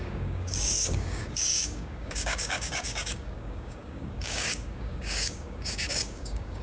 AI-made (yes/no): yes